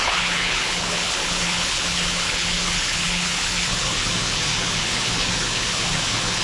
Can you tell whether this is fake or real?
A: fake